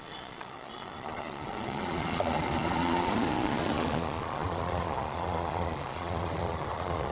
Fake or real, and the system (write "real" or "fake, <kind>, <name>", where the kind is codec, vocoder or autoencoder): fake, vocoder, Vocos